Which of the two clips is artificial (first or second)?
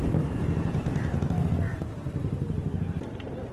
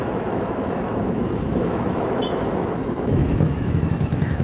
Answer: second